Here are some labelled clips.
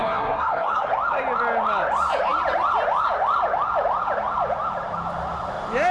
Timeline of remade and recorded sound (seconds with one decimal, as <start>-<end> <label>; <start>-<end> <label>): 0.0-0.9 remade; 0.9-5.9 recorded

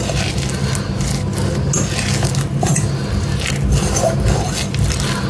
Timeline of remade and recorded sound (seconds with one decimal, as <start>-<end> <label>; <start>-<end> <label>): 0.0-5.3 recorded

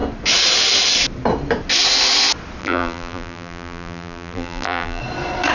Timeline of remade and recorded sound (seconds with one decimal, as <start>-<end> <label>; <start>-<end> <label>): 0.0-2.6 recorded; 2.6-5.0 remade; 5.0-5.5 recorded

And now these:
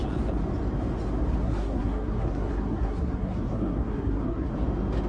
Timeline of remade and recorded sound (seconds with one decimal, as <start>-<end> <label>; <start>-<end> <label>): 0.0-1.4 recorded; 1.4-4.5 remade; 4.5-5.1 recorded